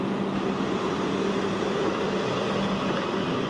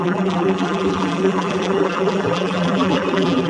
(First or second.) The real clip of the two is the first